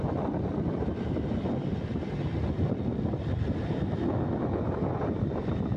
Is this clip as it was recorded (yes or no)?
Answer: yes